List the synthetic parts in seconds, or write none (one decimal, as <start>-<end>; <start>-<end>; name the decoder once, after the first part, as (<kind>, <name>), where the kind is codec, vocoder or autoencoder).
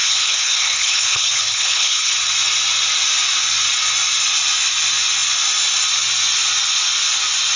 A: 0.0-2.1 (codec, HILCodec)